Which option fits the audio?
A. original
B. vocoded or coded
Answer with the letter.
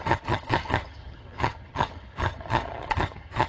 B